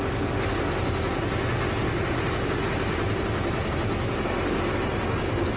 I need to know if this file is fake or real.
real